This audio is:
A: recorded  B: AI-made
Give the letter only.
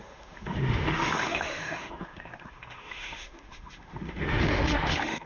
B